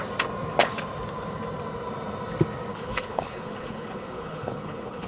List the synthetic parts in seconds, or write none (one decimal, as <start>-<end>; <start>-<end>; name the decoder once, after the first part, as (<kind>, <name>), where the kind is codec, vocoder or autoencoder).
2.7-5.1 (codec, HILCodec)